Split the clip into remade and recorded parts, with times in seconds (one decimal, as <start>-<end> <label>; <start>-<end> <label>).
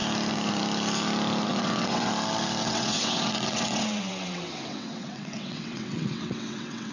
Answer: 0.0-1.5 recorded; 1.5-2.1 remade; 2.1-2.6 recorded; 2.6-6.9 remade